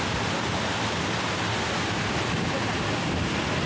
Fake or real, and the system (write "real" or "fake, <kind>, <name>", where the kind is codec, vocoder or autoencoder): real